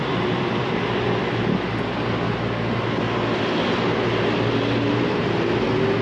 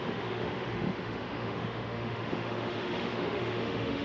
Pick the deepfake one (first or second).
second